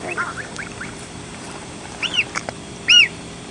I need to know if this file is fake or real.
fake